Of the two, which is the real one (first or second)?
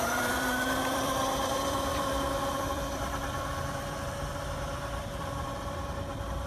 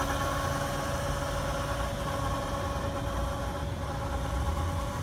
second